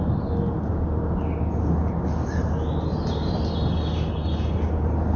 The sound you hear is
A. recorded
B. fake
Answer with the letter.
A